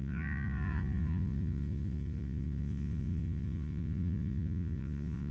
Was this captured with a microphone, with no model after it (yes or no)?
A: no